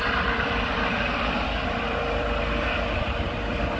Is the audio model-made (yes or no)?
yes